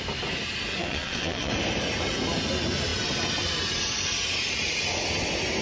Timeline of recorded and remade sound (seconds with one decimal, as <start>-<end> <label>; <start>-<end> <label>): 0.0-0.8 recorded; 0.8-1.5 remade; 1.5-5.6 recorded